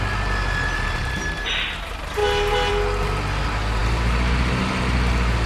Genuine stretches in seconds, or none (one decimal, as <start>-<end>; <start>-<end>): 0.0-5.5